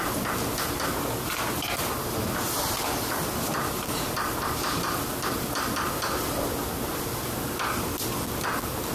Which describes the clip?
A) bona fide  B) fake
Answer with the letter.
A